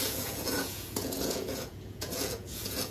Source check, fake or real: fake